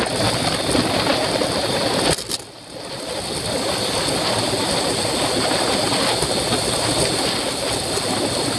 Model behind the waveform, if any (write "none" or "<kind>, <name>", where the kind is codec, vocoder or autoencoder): none